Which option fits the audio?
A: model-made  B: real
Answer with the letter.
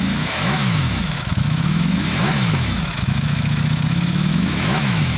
A